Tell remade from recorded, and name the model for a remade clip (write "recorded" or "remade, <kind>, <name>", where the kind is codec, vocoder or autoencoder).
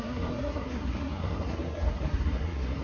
remade, codec, SNAC